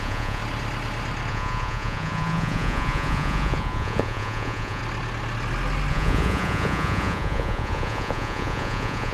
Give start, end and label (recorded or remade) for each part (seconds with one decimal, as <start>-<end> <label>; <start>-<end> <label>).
0.0-0.4 remade; 0.4-1.3 recorded; 1.3-4.8 remade; 4.8-5.9 recorded; 5.9-9.1 remade